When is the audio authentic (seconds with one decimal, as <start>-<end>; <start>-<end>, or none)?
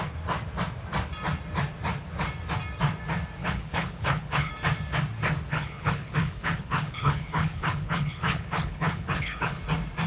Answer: 0.0-3.4; 4.5-5.5; 9.6-10.1